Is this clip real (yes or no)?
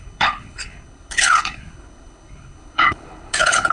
no